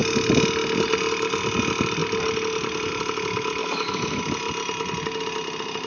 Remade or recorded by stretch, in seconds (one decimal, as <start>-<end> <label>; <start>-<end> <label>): 0.0-3.6 recorded; 3.6-4.2 remade; 4.2-5.9 recorded